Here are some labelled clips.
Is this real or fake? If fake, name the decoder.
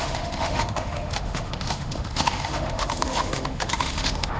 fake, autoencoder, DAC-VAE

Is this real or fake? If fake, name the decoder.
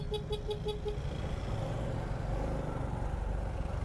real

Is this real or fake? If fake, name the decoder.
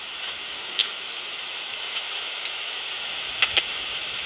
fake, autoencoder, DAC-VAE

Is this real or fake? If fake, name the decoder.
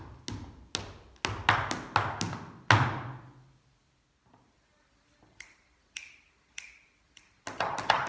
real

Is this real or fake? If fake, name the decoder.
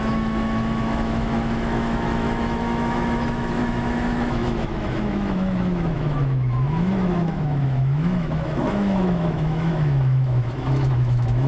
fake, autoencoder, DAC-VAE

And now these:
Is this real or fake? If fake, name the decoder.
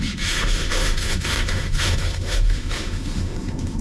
fake, autoencoder, DAC-VAE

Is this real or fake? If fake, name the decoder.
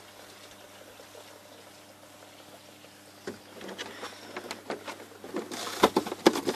real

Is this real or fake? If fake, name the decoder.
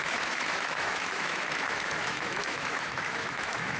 fake, autoencoder, DAC-VAE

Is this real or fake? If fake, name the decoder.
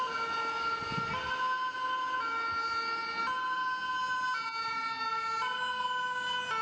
real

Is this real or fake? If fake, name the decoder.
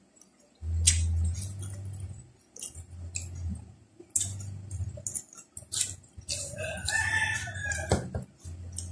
real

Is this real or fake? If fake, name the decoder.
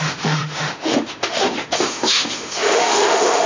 fake, autoencoder, DAC-VAE